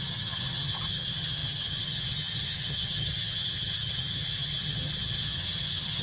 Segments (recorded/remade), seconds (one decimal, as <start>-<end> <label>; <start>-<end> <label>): 0.0-6.0 remade